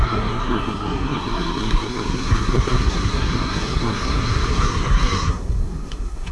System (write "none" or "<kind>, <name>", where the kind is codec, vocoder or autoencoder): codec, SNAC